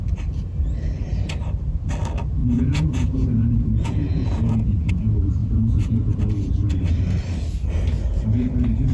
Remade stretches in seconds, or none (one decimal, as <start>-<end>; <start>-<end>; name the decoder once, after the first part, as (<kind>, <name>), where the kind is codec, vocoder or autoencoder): 2.4-4.9 (vocoder, Vocos); 5.4-6.5